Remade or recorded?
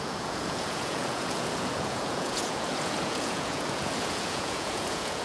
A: remade